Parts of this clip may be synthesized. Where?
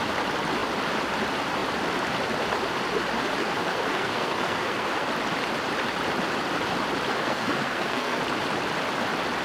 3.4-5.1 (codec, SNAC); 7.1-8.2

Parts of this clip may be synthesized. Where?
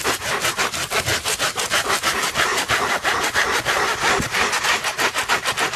1.1-2.1 (vocoder, BigVGAN v2)